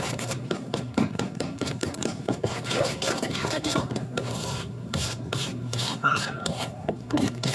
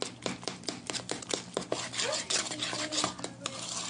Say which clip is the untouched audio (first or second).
second